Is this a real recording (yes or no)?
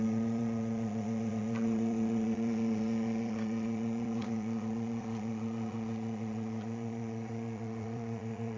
no